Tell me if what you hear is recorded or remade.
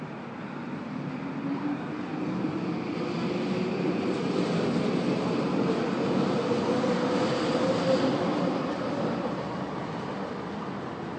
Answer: recorded